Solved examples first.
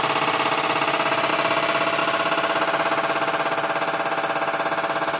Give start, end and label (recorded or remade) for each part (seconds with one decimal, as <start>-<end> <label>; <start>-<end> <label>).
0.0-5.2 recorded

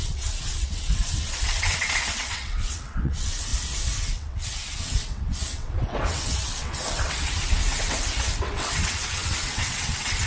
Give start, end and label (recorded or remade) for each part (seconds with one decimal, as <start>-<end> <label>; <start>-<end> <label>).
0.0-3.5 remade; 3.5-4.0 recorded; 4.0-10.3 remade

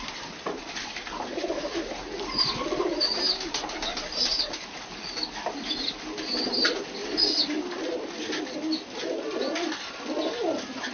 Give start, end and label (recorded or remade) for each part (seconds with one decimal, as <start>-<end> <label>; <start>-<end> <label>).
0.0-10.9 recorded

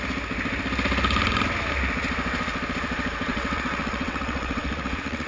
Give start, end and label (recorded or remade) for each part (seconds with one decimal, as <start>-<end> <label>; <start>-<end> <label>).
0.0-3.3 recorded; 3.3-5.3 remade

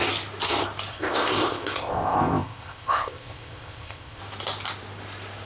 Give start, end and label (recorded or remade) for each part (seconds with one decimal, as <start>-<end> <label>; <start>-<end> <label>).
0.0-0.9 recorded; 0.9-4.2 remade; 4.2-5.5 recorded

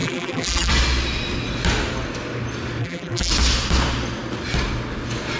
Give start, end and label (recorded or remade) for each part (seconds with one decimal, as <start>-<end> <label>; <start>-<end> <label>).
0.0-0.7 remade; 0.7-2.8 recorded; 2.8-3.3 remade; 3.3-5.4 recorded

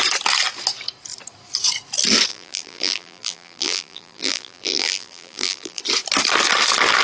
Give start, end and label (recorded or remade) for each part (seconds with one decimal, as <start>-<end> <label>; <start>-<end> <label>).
0.0-2.3 recorded; 2.3-5.8 remade; 5.8-7.0 recorded

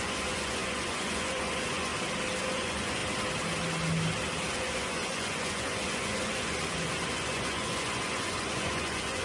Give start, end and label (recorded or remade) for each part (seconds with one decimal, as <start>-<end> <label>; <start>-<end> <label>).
0.0-1.9 remade; 1.9-2.4 recorded; 2.4-3.0 remade; 3.0-4.5 recorded; 4.5-9.2 remade